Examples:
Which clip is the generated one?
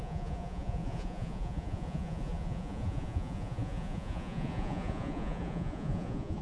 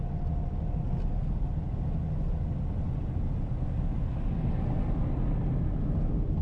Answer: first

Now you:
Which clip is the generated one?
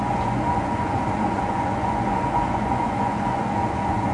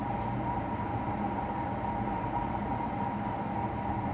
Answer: first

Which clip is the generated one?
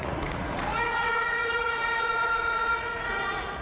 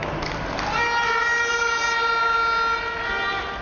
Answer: first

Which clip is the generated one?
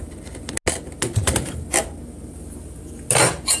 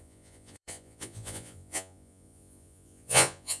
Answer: second